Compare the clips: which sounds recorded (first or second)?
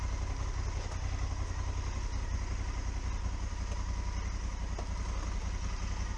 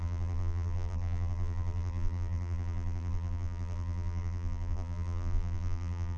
first